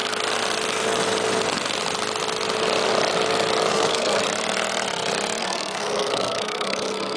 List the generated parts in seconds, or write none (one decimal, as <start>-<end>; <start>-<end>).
3.7-4.2; 5.4-7.2